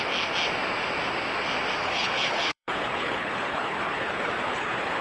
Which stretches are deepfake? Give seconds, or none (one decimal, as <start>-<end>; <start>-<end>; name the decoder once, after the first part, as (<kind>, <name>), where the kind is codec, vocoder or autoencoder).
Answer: 1.8-5.0 (codec, HILCodec)